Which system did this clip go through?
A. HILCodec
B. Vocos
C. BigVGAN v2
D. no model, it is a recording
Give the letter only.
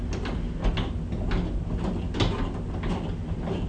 D